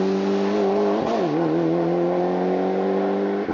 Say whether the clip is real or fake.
real